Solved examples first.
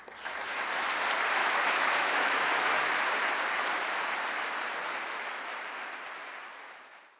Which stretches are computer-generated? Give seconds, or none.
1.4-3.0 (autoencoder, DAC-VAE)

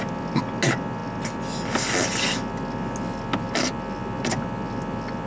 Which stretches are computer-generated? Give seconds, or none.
none

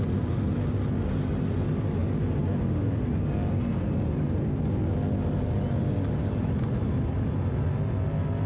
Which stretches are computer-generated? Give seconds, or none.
none

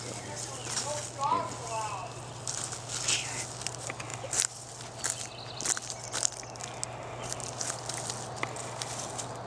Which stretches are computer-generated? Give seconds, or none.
none

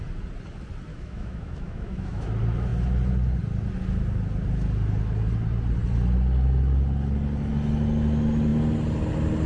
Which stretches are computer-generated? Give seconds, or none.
0.9-2.3 (autoencoder, DAC-VAE)

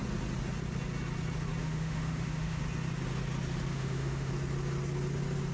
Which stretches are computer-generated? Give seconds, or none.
1.6-2.6 (autoencoder, DAC-VAE); 3.7-4.3